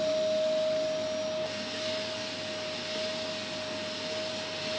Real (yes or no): yes